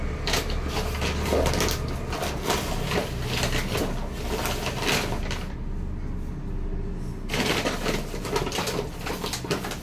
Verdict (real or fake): real